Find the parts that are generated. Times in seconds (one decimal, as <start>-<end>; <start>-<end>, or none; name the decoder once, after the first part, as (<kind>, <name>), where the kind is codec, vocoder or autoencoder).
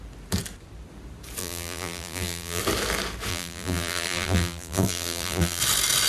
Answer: 1.4-2.6 (vocoder, BigVGAN v2); 3.3-5.6